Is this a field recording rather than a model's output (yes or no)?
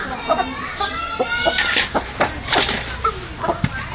yes